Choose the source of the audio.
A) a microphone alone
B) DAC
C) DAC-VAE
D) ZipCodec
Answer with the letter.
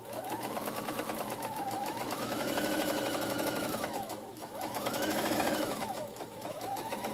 C